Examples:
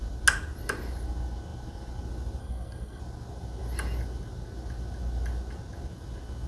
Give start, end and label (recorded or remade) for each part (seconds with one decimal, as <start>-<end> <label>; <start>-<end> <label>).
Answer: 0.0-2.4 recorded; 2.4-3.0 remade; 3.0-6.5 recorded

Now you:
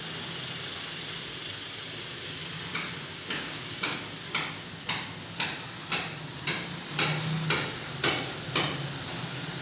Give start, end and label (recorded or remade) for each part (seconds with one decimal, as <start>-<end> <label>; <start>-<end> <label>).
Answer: 0.0-3.1 recorded; 3.1-4.0 remade; 4.0-9.6 recorded

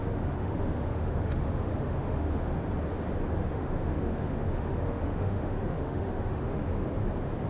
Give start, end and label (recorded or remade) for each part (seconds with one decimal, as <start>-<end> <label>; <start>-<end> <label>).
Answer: 0.0-2.5 remade; 2.5-3.4 recorded; 3.4-6.7 remade; 6.7-7.5 recorded

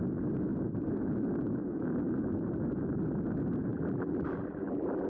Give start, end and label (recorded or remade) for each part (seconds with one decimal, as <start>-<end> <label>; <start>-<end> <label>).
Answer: 0.0-3.7 recorded; 3.7-5.1 remade